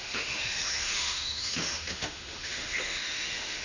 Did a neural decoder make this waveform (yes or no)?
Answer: yes